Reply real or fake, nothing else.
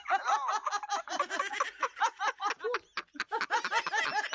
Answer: real